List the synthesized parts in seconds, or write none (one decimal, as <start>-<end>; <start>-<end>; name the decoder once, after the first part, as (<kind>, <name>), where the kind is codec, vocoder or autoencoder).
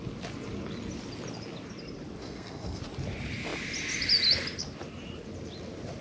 2.2-2.8 (codec, SNAC)